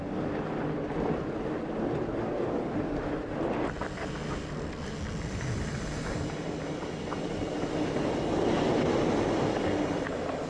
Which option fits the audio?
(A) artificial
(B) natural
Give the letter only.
B